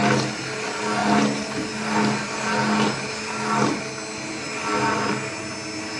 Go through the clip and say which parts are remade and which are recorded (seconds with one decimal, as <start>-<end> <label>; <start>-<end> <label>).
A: 0.0-6.0 recorded